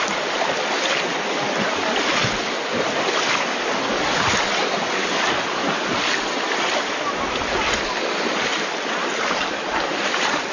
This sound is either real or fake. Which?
real